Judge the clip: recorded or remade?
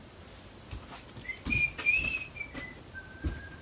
recorded